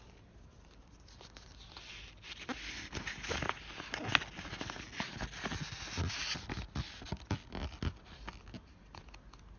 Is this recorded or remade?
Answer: recorded